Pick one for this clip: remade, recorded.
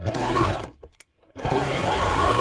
remade